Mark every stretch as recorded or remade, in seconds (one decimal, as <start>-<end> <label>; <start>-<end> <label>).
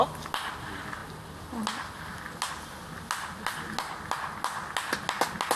0.0-5.6 recorded